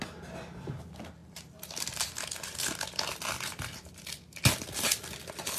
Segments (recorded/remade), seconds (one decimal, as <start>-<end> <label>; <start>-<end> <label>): 0.0-5.6 recorded

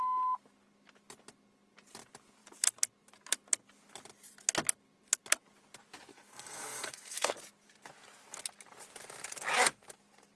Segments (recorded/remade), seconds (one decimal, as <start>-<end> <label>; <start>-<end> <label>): 0.0-6.1 recorded; 6.1-7.3 remade; 7.3-10.4 recorded